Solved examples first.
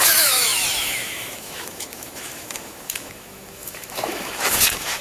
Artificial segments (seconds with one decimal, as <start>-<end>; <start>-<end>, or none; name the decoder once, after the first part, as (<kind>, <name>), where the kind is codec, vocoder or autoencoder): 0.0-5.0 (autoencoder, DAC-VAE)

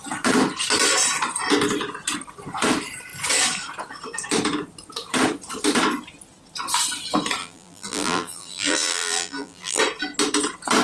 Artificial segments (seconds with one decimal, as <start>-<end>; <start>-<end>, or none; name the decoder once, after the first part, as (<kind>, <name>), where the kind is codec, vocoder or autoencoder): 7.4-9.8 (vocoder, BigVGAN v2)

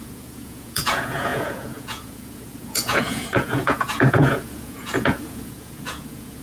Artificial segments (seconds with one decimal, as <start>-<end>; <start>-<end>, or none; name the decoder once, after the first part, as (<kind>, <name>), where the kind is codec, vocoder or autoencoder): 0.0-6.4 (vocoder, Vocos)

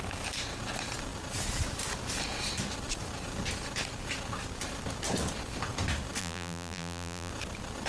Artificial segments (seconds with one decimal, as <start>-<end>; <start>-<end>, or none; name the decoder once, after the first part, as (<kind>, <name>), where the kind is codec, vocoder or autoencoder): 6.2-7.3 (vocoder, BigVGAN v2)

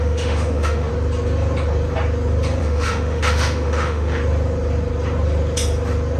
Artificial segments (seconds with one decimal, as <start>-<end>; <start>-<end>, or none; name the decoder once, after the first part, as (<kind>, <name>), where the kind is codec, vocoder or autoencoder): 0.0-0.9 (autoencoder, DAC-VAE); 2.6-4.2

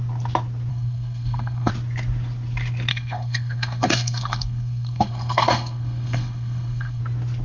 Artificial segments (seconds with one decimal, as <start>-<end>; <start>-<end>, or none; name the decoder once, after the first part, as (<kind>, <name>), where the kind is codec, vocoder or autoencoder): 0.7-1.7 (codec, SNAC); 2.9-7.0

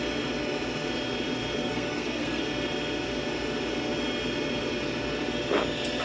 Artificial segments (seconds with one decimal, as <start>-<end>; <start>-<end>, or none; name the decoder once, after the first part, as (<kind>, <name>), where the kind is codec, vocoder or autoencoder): 1.6-2.4 (codec, SNAC)